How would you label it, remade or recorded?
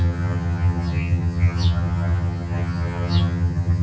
remade